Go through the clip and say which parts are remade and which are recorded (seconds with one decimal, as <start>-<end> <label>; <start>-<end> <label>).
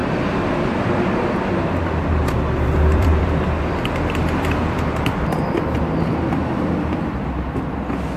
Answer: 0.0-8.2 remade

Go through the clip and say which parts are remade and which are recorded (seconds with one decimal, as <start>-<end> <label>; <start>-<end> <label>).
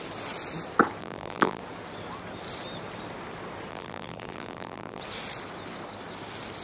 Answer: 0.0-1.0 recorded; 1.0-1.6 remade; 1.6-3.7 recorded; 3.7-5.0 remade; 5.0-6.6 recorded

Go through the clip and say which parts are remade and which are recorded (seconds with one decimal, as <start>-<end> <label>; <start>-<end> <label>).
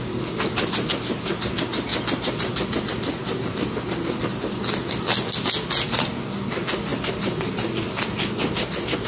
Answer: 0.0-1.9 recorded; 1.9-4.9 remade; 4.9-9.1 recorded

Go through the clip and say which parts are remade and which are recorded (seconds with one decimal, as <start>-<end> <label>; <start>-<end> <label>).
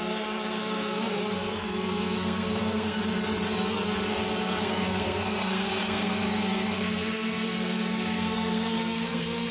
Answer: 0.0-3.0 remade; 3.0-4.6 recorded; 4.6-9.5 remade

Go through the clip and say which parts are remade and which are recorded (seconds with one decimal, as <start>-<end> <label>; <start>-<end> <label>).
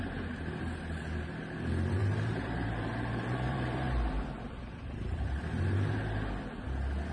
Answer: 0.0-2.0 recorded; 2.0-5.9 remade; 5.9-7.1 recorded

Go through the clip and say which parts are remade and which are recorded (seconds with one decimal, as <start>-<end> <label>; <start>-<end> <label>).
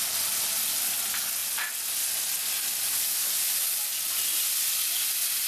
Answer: 0.0-5.5 recorded